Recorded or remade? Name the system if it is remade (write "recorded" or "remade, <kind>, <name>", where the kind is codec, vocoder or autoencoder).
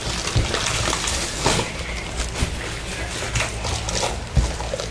recorded